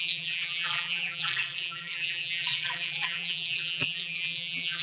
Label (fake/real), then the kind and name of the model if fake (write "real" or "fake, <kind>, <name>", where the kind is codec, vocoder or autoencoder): fake, vocoder, BigVGAN v2